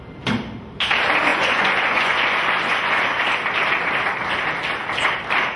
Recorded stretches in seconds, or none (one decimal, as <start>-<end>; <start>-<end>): 0.0-1.3; 3.2-5.6